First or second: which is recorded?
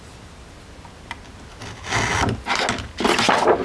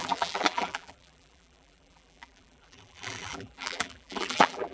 first